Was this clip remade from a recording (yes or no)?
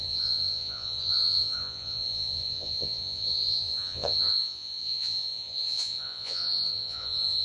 yes